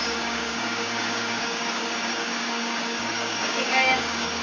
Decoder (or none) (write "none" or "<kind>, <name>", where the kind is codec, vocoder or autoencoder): codec, DAC